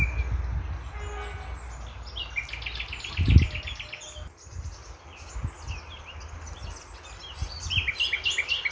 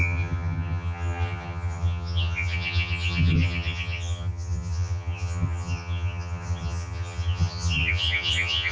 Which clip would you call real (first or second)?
first